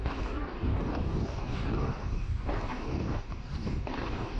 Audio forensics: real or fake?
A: fake